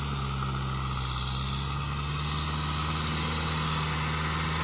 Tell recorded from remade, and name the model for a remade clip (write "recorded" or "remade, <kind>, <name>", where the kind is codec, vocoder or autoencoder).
recorded